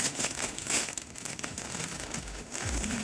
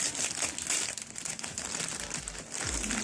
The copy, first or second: first